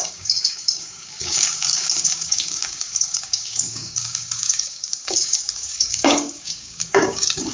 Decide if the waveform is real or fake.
fake